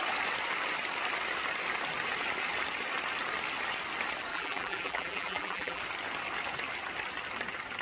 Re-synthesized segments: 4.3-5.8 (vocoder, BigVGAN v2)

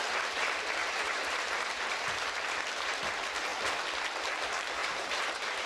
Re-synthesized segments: 0.8-1.5 (vocoder, BigVGAN v2); 4.8-5.7